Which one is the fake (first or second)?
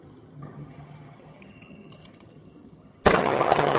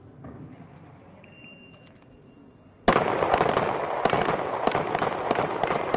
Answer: first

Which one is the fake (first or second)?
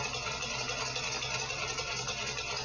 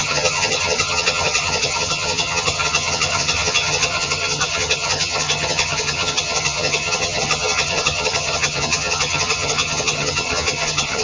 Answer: second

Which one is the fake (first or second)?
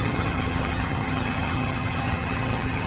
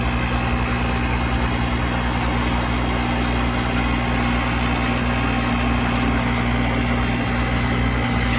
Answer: first